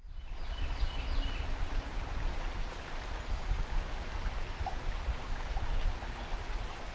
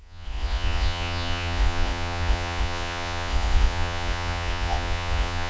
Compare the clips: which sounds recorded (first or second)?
first